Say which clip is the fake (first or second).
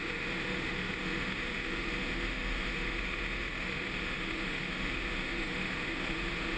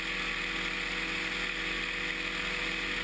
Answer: first